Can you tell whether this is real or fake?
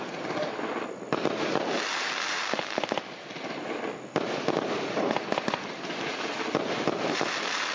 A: real